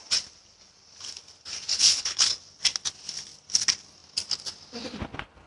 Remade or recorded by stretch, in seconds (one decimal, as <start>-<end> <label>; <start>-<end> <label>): 0.0-1.7 recorded; 1.7-2.4 remade; 2.4-5.5 recorded